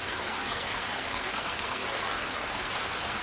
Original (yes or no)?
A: no